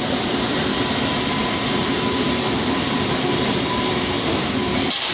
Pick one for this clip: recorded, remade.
remade